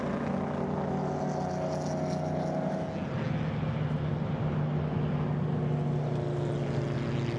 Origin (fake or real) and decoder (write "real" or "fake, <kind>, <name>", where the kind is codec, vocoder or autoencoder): real